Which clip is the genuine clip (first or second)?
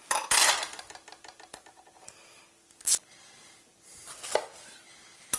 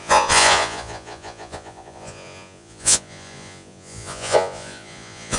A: first